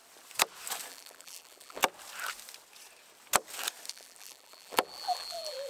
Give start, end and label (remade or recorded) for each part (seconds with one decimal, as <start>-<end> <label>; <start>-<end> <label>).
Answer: 0.0-0.9 recorded; 0.9-1.8 remade; 1.8-3.9 recorded; 3.9-5.7 remade